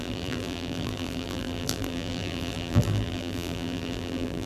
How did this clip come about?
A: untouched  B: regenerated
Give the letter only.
B